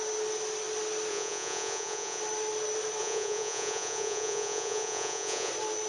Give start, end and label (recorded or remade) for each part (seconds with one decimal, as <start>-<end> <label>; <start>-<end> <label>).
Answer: 0.0-1.1 recorded; 1.1-2.2 remade; 2.2-3.0 recorded; 3.0-5.5 remade; 5.5-5.9 recorded